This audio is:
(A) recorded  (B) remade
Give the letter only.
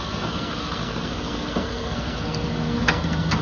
B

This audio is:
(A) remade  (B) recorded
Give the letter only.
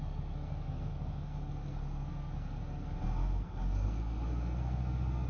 A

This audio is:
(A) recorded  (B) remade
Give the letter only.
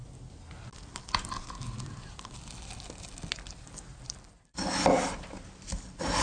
A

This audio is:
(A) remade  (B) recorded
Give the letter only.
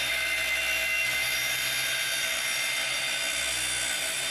B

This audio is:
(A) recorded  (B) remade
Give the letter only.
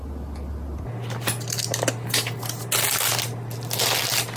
A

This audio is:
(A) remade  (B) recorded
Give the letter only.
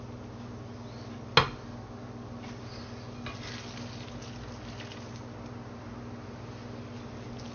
B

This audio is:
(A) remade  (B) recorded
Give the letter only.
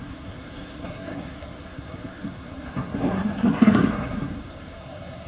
A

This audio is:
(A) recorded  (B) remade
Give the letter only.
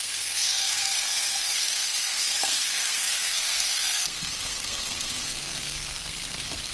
B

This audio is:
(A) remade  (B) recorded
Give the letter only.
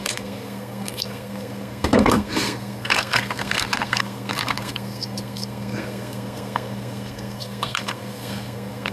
A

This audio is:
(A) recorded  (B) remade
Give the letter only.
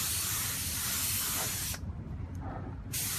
A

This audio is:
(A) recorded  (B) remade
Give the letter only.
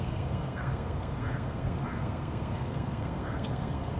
B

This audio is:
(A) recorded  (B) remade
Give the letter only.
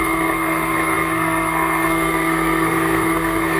B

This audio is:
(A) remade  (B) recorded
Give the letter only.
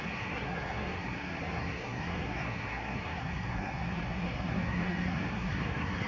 A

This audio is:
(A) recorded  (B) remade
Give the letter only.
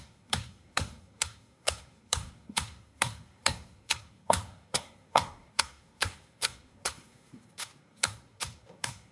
B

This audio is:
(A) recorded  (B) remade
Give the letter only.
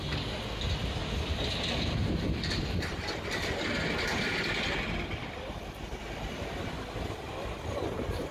A